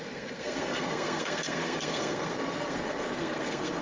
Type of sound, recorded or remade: remade